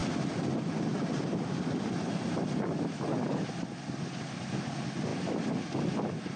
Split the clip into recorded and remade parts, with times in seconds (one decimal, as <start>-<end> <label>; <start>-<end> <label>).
0.0-6.4 recorded